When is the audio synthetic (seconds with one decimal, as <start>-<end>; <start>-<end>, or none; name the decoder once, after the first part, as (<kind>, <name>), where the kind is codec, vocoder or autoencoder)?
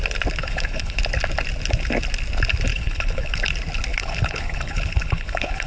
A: 0.4-1.0 (codec, HILCodec); 2.7-3.4; 3.9-5.7